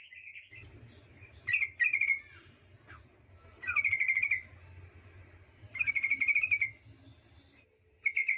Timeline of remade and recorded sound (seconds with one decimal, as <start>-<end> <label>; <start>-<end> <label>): 0.0-8.4 recorded